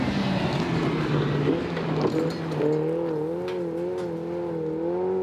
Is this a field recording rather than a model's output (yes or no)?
yes